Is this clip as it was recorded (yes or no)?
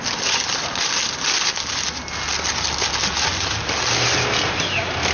yes